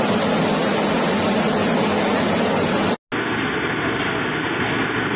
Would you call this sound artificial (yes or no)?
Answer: no